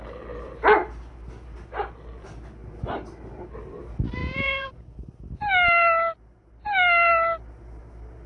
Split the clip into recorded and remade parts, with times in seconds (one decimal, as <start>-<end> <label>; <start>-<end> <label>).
0.0-4.2 recorded; 4.2-4.8 remade; 4.8-8.3 recorded